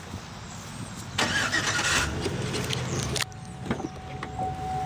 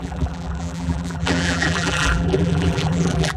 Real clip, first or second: first